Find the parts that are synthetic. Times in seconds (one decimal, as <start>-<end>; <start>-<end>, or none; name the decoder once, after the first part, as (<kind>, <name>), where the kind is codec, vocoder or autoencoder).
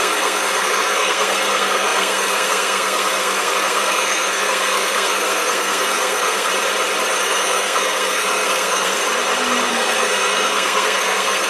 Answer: 0.0-6.5 (codec, SNAC); 7.2-9.0; 9.7-11.5